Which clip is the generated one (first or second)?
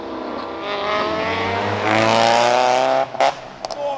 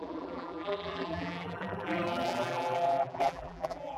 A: second